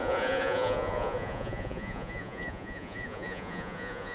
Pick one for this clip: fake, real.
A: fake